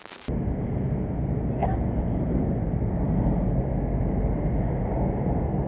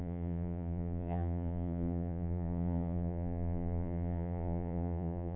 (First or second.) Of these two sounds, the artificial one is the second